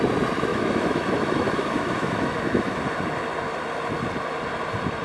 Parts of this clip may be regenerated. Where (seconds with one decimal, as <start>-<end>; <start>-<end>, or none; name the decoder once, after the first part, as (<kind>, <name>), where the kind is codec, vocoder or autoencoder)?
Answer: 0.5-2.8 (autoencoder, DAC-VAE)